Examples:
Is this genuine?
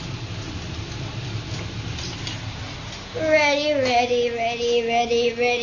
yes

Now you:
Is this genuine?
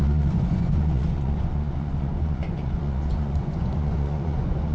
no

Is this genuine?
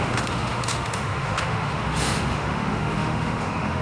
no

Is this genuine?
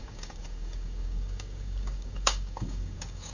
no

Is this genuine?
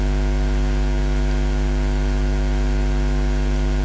yes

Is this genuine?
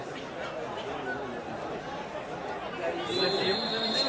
yes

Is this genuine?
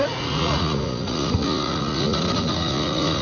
no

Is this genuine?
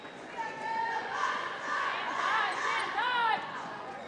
no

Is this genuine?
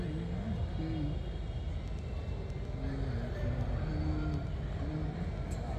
yes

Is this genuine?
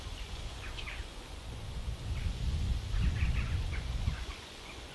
no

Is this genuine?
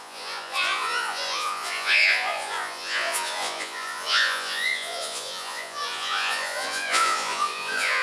no